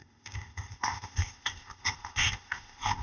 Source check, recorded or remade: remade